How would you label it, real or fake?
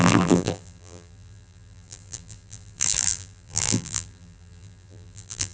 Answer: fake